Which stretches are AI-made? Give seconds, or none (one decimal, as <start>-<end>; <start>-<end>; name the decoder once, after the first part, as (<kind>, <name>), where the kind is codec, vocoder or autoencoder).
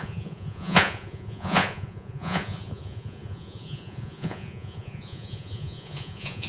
0.0-6.5 (vocoder, Vocos)